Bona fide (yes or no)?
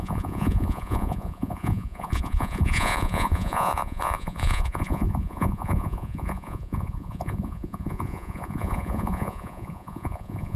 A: no